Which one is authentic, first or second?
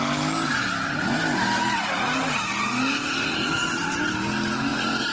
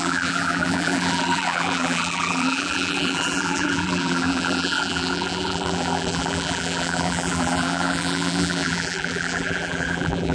first